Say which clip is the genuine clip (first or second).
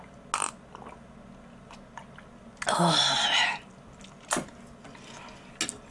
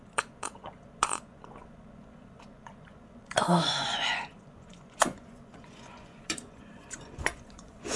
first